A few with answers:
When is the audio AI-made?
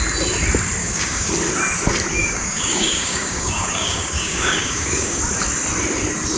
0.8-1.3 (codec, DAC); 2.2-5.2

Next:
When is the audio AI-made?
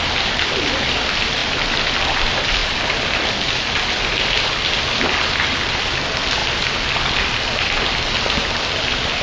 none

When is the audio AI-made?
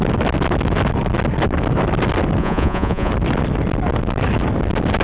2.4-3.1 (vocoder, Vocos)